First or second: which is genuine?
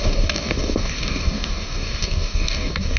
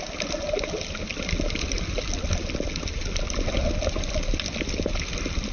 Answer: second